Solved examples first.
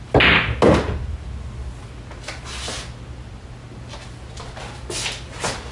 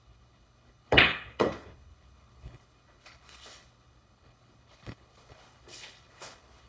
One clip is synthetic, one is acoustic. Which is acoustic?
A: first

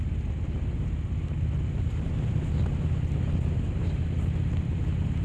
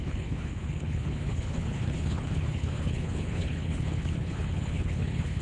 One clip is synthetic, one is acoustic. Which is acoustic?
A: first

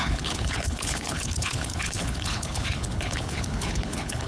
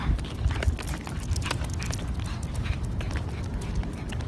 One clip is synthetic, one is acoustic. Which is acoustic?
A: second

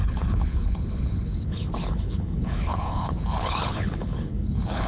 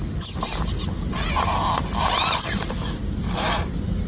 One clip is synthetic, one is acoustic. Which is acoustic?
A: second